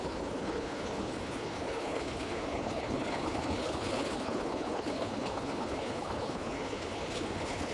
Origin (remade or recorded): remade